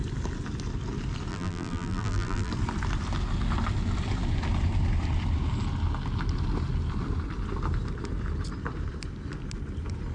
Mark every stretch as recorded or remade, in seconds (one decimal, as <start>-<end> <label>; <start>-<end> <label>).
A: 0.0-1.3 recorded; 1.3-2.5 remade; 2.5-10.1 recorded

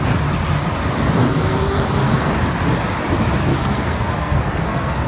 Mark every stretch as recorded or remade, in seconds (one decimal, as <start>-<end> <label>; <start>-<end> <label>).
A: 0.0-1.2 recorded; 1.2-2.3 remade; 2.3-3.5 recorded; 3.5-5.1 remade

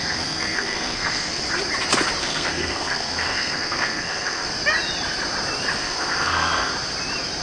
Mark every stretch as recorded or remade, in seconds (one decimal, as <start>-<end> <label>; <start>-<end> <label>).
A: 0.0-1.4 remade; 1.4-2.2 recorded; 2.2-4.5 remade; 4.5-5.8 recorded; 5.8-6.7 remade; 6.7-7.4 recorded

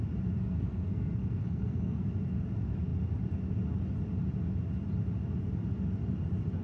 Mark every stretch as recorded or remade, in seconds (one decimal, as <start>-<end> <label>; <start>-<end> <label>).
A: 0.0-0.4 recorded; 0.4-2.1 remade; 2.1-6.6 recorded

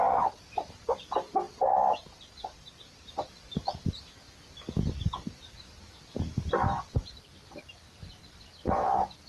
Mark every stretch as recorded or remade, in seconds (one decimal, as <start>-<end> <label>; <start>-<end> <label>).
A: 0.0-9.3 recorded

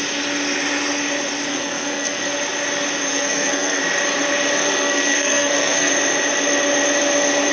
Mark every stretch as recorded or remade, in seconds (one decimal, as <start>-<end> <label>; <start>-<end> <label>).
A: 0.0-1.5 recorded; 1.5-2.2 remade; 2.2-3.1 recorded; 3.1-3.8 remade; 3.8-4.6 recorded; 4.6-5.9 remade; 5.9-7.5 recorded